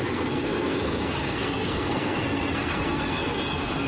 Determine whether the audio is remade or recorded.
remade